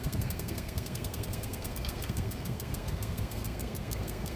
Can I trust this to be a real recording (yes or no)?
no